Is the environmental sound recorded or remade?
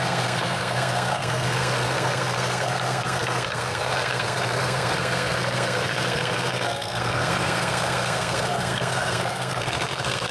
remade